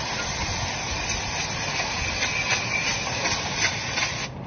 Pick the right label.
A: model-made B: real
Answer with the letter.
B